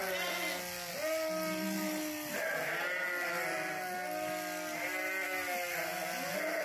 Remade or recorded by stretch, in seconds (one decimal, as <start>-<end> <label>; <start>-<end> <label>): 0.0-6.6 recorded